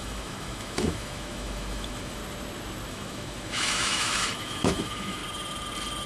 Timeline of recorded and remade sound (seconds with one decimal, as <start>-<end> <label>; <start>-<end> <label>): 0.0-2.2 remade; 2.2-2.9 recorded; 2.9-5.2 remade; 5.2-6.1 recorded